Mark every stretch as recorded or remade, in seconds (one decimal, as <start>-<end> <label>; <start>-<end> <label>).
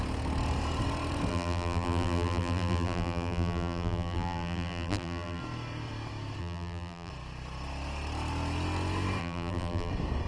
0.0-1.3 recorded; 1.3-5.4 remade; 5.4-6.4 recorded; 6.4-7.1 remade; 7.1-9.2 recorded; 9.2-9.9 remade; 9.9-10.3 recorded